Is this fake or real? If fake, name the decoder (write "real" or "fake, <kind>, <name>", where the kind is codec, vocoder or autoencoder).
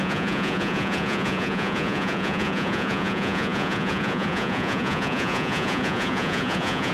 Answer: fake, vocoder, Vocos